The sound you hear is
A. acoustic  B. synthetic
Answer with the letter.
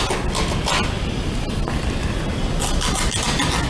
A